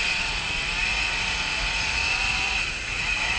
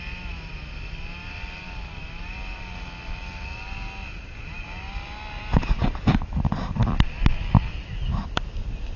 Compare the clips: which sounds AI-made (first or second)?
first